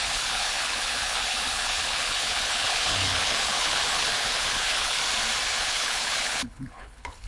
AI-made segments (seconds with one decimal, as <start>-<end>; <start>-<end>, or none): 0.0-5.0; 5.6-7.3